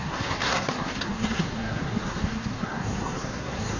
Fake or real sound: fake